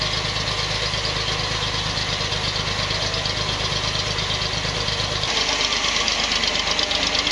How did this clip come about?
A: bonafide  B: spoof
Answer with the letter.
A